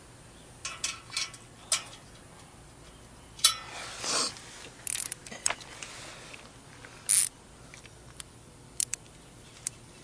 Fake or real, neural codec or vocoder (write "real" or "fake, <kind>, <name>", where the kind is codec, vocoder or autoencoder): real